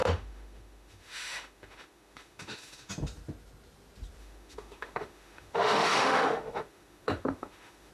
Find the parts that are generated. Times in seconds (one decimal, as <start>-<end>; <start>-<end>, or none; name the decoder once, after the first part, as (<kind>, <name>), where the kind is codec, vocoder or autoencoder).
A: 0.0-2.9 (autoencoder, DAC-VAE); 4.2-7.9